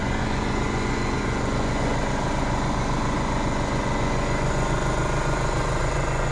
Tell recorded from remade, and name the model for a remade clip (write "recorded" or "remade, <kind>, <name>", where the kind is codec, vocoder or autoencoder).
remade, vocoder, Vocos